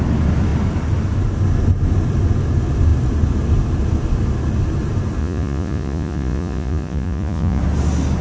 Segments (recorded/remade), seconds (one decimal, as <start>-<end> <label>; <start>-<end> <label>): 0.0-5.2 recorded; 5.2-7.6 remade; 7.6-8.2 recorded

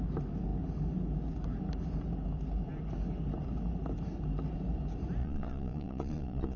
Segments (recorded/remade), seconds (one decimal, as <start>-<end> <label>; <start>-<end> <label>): 0.0-5.2 recorded; 5.2-6.6 remade

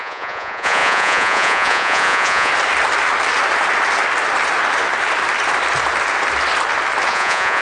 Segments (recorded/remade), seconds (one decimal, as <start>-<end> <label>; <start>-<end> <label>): 0.0-2.5 remade; 2.5-7.1 recorded; 7.1-7.6 remade